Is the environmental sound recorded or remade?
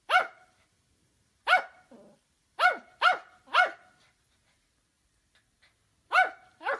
recorded